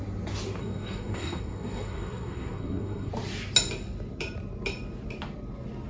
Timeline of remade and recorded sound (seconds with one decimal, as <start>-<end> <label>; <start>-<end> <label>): 0.0-0.6 recorded; 0.6-3.1 remade; 3.1-5.9 recorded